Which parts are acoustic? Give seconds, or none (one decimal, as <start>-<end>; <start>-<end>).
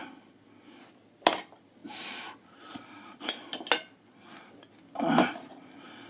0.0-6.1